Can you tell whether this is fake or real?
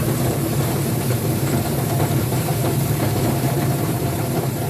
fake